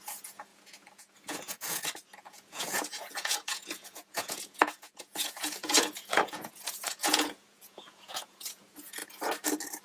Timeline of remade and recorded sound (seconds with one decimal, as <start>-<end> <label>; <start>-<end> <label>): 0.0-9.0 remade; 9.0-9.8 recorded